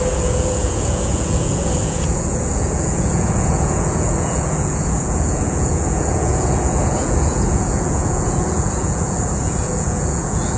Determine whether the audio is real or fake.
fake